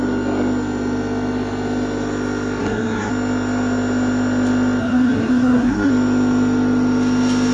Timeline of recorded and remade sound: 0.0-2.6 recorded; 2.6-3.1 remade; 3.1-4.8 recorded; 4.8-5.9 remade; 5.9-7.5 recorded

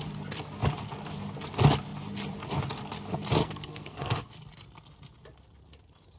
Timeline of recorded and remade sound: 0.0-3.4 recorded; 3.4-4.3 remade; 4.3-6.2 recorded

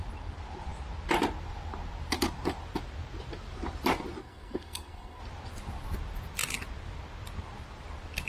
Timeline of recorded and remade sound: 0.0-4.2 recorded; 4.2-5.2 remade; 5.2-8.3 recorded

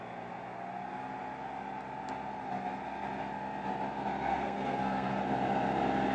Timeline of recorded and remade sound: 0.0-4.3 recorded; 4.3-5.1 remade; 5.1-6.1 recorded

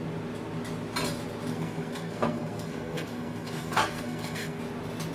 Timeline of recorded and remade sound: 0.0-1.5 recorded; 1.5-4.6 remade; 4.6-5.1 recorded

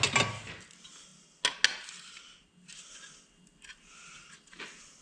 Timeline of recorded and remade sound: 0.0-5.0 recorded